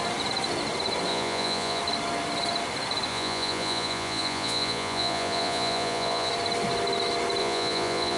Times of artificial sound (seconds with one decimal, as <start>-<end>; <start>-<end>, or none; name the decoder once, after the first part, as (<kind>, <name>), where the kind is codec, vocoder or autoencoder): 1.1-1.8 (vocoder, Vocos); 3.1-6.3; 7.4-8.2

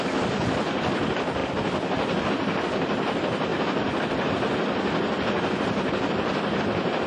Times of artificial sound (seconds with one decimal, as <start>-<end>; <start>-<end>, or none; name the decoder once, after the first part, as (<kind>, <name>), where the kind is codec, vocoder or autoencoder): none

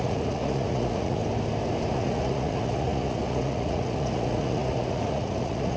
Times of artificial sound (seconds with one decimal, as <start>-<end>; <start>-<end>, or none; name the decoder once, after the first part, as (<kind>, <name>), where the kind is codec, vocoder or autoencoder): 0.0-1.2 (vocoder, Vocos); 1.9-5.8

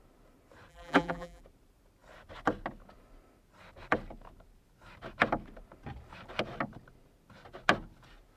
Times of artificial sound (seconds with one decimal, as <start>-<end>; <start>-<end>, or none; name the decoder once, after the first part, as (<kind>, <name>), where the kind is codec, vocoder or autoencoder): 0.7-1.4 (vocoder, BigVGAN v2)